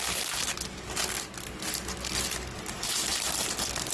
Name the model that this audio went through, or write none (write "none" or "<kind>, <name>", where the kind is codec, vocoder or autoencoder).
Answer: none